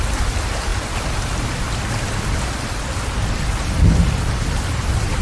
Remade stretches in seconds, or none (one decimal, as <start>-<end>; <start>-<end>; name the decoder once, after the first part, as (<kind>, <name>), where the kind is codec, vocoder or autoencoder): none